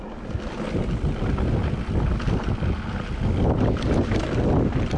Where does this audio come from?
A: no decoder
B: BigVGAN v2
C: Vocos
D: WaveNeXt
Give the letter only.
A